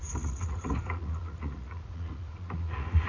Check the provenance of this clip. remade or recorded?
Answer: remade